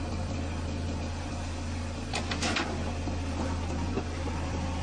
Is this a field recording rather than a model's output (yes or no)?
yes